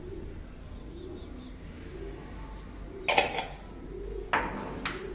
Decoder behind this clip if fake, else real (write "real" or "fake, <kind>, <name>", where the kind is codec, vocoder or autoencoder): real